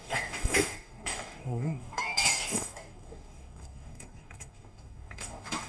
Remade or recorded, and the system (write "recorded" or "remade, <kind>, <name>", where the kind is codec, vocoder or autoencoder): remade, codec, DAC